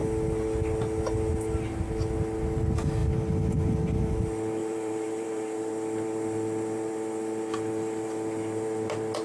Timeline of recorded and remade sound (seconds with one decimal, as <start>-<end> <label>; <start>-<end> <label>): 0.0-4.6 recorded; 4.6-5.7 remade; 5.7-9.2 recorded